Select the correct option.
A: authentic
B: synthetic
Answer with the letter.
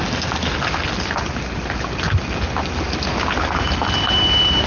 A